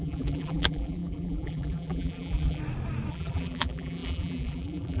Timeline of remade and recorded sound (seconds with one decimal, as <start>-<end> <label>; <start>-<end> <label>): 0.0-2.6 remade; 2.6-3.1 recorded; 3.1-5.0 remade